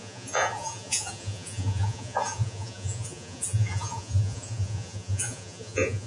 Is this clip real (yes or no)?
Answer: no